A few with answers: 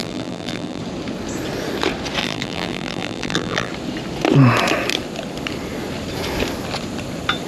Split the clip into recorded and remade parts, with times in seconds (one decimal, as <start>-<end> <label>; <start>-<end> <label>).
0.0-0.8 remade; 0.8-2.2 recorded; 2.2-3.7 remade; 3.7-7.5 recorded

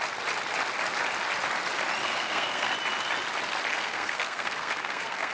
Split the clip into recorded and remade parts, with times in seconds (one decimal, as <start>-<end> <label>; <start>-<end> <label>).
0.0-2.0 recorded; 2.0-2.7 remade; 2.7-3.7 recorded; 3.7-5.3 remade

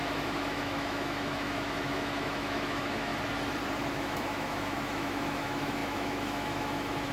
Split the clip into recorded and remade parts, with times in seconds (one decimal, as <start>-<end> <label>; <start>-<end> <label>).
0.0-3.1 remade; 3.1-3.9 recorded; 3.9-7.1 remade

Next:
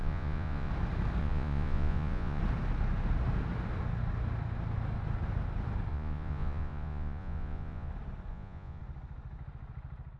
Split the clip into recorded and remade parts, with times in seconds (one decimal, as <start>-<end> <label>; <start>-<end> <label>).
0.0-0.7 remade; 0.7-1.2 recorded; 1.2-2.4 remade; 2.4-5.9 recorded; 5.9-7.9 remade; 7.9-8.3 recorded; 8.3-8.8 remade; 8.8-10.2 recorded

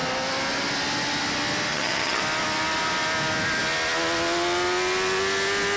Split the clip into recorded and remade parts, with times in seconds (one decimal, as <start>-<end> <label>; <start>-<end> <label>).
0.0-1.7 recorded; 1.7-2.2 remade; 2.2-5.8 recorded

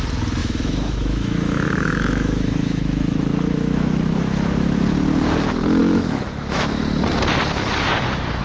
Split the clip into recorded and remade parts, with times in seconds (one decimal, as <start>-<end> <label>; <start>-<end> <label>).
0.0-0.4 recorded; 0.4-4.8 remade; 4.8-5.8 recorded; 5.8-6.8 remade; 6.8-8.4 recorded

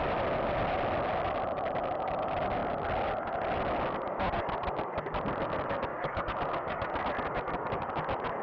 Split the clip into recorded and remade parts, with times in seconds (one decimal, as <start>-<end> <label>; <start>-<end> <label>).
0.0-5.9 recorded; 5.9-6.9 remade; 6.9-8.4 recorded

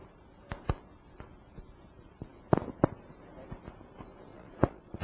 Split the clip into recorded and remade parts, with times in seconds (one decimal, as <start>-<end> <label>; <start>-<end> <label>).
0.0-4.3 recorded; 4.3-5.0 remade